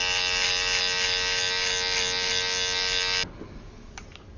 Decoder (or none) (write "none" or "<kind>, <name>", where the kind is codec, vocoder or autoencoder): none